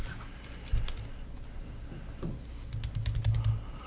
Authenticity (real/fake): real